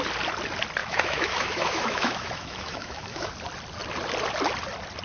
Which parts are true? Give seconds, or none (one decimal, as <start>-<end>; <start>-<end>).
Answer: 0.0-0.8; 3.3-5.0